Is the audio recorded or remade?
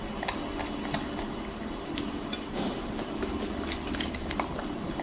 recorded